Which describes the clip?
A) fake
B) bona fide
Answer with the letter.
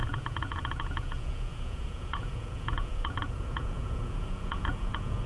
A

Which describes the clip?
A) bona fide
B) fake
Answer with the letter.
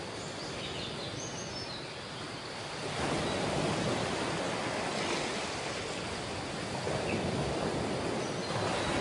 A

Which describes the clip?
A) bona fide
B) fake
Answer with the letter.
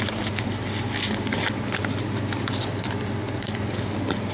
A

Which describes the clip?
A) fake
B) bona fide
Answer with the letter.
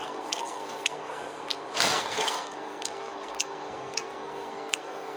A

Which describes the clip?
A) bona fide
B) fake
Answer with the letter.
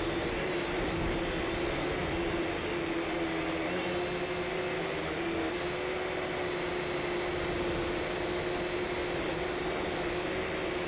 A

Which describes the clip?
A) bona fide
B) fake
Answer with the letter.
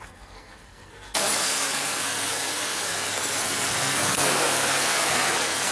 B